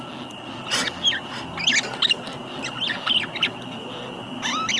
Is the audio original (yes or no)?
yes